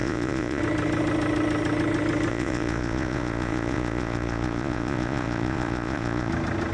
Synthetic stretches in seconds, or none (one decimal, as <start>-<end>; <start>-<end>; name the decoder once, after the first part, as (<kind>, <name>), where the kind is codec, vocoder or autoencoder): 0.0-0.6 (vocoder, Vocos); 2.3-6.3